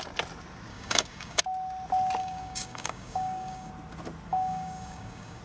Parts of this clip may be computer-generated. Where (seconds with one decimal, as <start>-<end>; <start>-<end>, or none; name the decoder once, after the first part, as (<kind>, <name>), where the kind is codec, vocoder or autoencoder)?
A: 0.7-1.4 (codec, DAC); 2.2-3.7; 4.3-5.4